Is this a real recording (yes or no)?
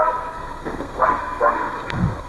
no